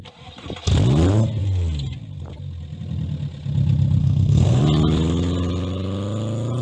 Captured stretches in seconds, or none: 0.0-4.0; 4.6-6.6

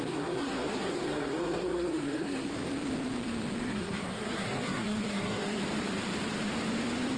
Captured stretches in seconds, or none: 2.5-3.6; 5.6-7.2

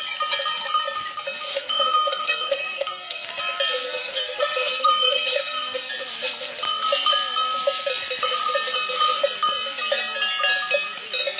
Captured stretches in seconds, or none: 0.0-1.5; 3.4-4.0; 5.9-11.4

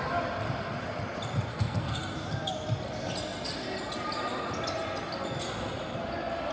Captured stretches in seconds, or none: 0.0-1.5; 2.0-6.5

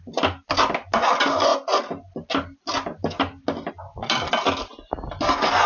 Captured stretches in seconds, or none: 0.0-5.7

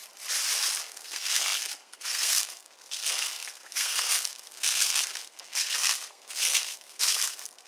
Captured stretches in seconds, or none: 0.0-0.8

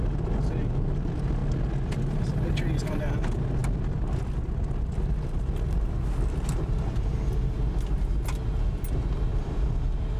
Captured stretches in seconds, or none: 0.0-10.2

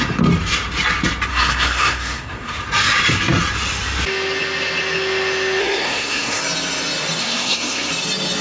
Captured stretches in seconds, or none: 0.0-1.3; 2.6-5.6; 6.4-7.2; 7.9-8.4